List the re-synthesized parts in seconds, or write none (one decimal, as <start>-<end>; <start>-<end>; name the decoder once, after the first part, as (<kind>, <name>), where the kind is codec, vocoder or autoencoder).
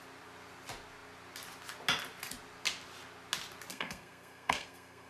3.7-5.1 (codec, SNAC)